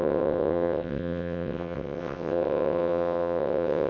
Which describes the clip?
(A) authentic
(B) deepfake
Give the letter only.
B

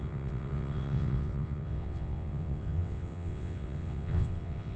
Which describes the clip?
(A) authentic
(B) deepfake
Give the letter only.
B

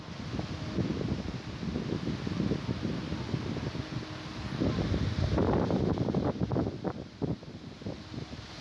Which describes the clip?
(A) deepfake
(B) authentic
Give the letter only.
B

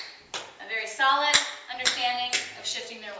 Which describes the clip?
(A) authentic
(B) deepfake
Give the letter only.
A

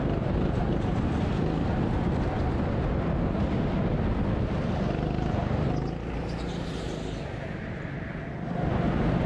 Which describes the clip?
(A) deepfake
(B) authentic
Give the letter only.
B